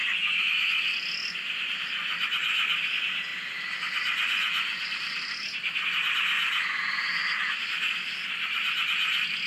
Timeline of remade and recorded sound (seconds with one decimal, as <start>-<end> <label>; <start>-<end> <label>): 0.0-9.5 recorded